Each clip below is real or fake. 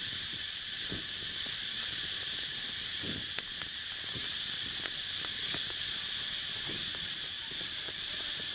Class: fake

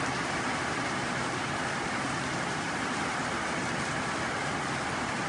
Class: real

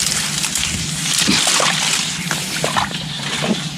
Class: real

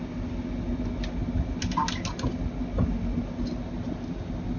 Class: real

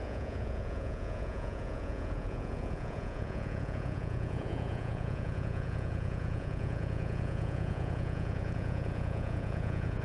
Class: fake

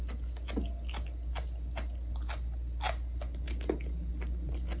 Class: real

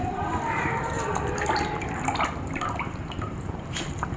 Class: fake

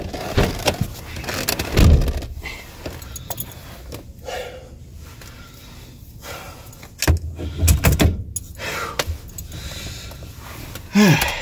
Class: real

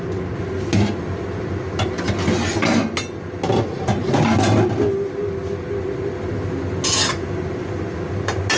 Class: real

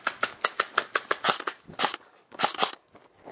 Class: fake